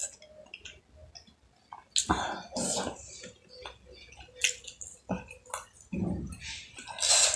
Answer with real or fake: real